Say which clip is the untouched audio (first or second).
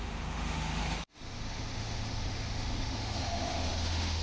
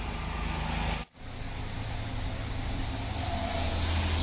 second